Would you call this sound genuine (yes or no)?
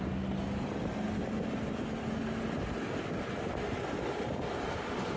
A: yes